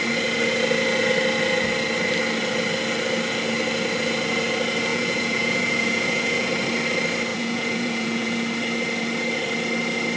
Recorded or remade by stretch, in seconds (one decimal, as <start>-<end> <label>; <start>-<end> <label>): 0.0-4.9 recorded; 4.9-6.5 remade; 6.5-7.3 recorded; 7.3-8.4 remade; 8.4-10.2 recorded